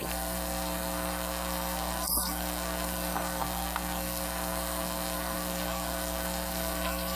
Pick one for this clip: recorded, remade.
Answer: remade